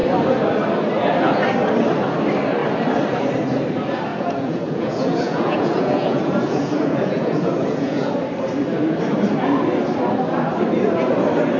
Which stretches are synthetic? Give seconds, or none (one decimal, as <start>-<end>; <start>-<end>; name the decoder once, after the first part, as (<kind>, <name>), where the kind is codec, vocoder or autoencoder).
4.1-8.1 (vocoder, Vocos)